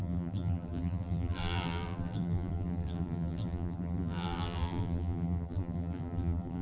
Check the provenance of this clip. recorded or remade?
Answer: remade